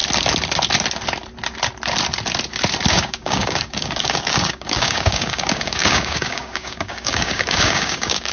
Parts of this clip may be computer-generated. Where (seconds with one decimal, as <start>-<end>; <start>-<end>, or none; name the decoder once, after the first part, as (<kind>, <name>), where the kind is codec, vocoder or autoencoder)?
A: 2.9-8.3 (codec, DAC)